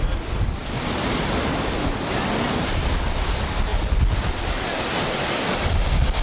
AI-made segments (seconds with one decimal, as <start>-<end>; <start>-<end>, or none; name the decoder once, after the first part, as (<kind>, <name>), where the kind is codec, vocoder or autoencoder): 0.6-2.2 (vocoder, BigVGAN v2)